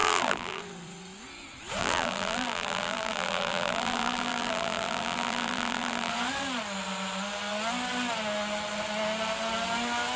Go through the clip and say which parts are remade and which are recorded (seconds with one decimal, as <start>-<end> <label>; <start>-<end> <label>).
0.0-0.6 remade; 0.6-1.8 recorded; 1.8-6.1 remade; 6.1-10.2 recorded

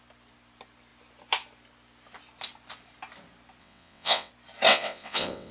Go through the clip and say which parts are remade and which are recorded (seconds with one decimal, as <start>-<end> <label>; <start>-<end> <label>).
0.0-3.6 recorded; 3.6-4.3 remade; 4.3-4.7 recorded; 4.7-5.5 remade